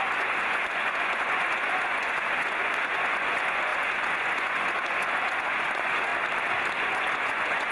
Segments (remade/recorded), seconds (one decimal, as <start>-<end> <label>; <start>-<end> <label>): 0.0-6.1 remade; 6.1-6.8 recorded; 6.8-7.7 remade